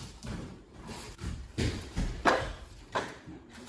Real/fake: fake